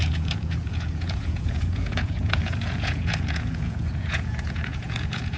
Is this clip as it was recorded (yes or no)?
no